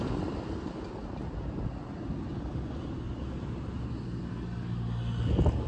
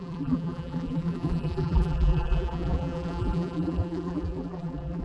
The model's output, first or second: second